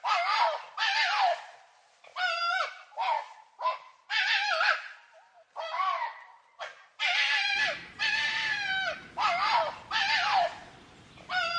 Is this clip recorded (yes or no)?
yes